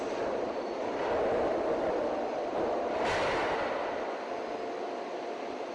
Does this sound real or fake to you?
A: real